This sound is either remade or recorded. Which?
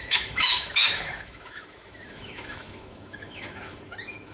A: remade